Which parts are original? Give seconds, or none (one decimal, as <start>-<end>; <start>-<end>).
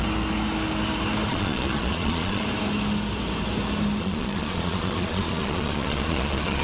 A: 0.0-1.3; 2.4-4.0